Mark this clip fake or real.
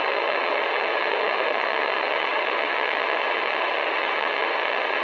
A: fake